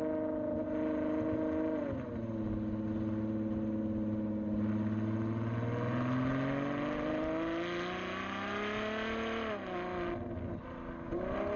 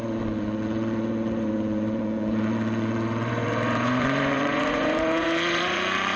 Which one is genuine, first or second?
first